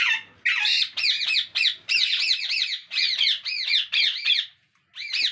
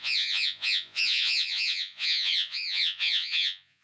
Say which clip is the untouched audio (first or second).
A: first